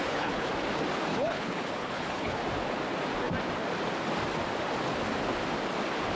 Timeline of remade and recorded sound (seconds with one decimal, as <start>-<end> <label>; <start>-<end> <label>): 0.0-0.5 remade; 0.5-1.1 recorded; 1.1-2.4 remade; 2.4-6.2 recorded